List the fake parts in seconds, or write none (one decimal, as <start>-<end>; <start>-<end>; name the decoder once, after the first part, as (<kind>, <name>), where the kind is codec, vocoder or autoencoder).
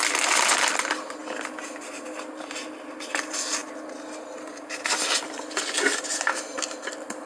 none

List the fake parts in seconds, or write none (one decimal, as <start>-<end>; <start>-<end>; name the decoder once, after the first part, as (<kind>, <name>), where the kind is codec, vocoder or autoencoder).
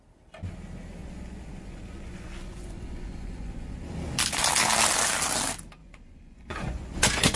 1.0-3.8 (vocoder, Vocos); 5.8-7.4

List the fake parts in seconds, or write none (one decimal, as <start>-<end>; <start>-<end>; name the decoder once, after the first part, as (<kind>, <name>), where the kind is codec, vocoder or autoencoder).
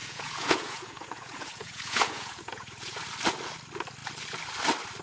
0.0-3.0 (vocoder, Vocos)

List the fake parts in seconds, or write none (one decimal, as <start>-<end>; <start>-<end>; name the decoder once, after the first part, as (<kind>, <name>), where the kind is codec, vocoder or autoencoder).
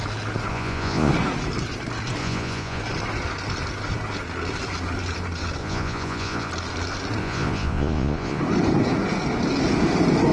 0.5-1.1 (vocoder, Vocos); 2.2-2.8; 5.6-6.5; 7.2-8.4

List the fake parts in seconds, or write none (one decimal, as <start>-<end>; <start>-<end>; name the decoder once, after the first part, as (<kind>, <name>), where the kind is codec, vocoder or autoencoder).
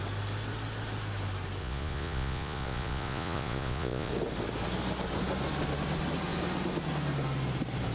1.6-4.1 (vocoder, Vocos)